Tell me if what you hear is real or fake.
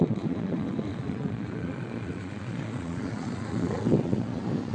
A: fake